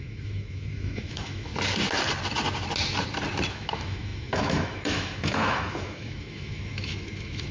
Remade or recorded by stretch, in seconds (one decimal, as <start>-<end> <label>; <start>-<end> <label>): 0.0-1.5 remade; 1.5-3.5 recorded; 3.5-7.5 remade